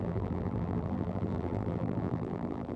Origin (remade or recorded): remade